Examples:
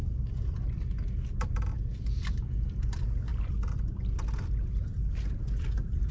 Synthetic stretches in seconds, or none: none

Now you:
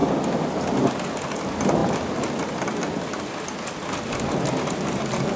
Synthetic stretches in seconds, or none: none